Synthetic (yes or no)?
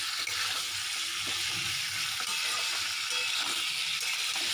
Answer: no